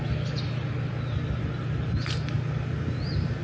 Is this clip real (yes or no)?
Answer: yes